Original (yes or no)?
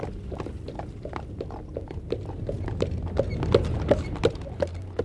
yes